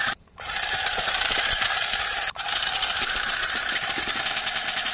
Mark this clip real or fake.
fake